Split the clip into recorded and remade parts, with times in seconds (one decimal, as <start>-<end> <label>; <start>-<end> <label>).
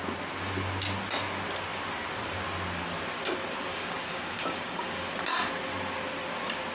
0.0-3.7 recorded; 3.7-5.0 remade; 5.0-6.7 recorded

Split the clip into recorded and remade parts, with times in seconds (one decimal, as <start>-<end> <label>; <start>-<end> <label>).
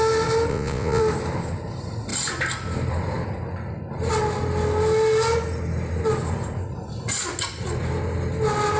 0.0-0.5 recorded; 0.5-1.0 remade; 1.0-8.8 recorded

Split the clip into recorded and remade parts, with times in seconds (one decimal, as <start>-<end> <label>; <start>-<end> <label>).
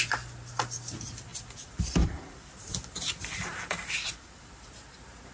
0.0-1.3 recorded; 1.3-4.5 remade; 4.5-5.3 recorded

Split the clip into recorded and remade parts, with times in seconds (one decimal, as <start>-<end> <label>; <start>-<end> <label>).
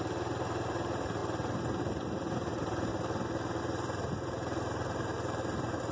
0.0-1.2 remade; 1.2-1.8 recorded; 1.8-2.9 remade; 2.9-3.6 recorded; 3.6-5.9 remade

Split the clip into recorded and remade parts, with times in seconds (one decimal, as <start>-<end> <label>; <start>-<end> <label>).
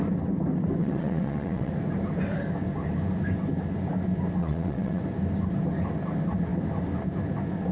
0.0-0.8 recorded; 0.8-1.7 remade; 1.7-4.4 recorded; 4.4-5.0 remade; 5.0-7.7 recorded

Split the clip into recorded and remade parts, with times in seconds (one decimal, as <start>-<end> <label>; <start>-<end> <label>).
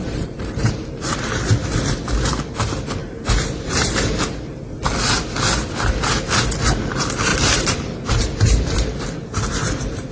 0.0-1.2 remade; 1.2-3.0 recorded; 3.0-4.2 remade; 4.2-7.3 recorded; 7.3-8.2 remade; 8.2-10.1 recorded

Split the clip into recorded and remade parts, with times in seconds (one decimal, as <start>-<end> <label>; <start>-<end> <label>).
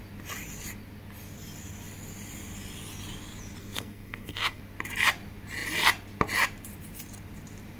0.0-3.6 recorded; 3.6-4.6 remade; 4.6-7.8 recorded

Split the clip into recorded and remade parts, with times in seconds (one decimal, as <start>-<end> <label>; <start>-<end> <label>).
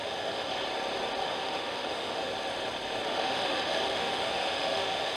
0.0-0.5 remade; 0.5-1.2 recorded; 1.2-2.3 remade; 2.3-3.0 recorded; 3.0-5.2 remade